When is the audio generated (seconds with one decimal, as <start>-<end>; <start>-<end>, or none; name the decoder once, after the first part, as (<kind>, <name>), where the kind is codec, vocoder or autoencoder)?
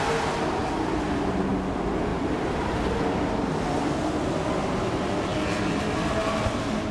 0.6-1.5 (vocoder, BigVGAN v2); 2.1-3.5